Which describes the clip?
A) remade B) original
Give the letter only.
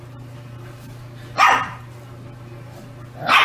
B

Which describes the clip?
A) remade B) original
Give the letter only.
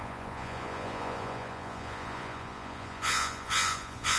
A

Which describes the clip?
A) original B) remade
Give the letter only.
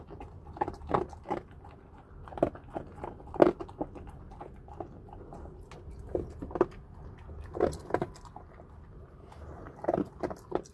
A